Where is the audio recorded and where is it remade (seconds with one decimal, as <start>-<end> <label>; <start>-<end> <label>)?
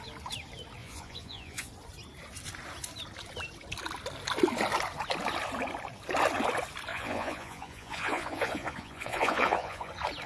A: 0.0-0.8 recorded; 0.8-1.7 remade; 1.7-6.9 recorded; 6.9-9.9 remade; 9.9-10.3 recorded